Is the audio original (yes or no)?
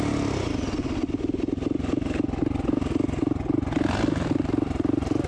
yes